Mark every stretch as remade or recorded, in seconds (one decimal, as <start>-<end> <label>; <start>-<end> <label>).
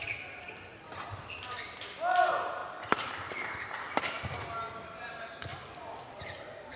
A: 0.0-0.7 recorded; 0.7-1.9 remade; 1.9-6.8 recorded